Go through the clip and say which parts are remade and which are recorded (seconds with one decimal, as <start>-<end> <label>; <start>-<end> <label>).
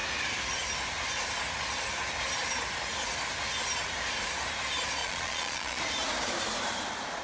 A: 0.0-5.0 recorded; 5.0-5.8 remade; 5.8-7.2 recorded